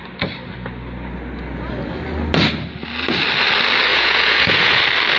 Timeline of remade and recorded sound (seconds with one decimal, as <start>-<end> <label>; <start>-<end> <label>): 0.0-3.9 recorded; 3.9-4.8 remade; 4.8-5.2 recorded